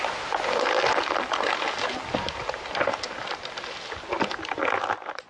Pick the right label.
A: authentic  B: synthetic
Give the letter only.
A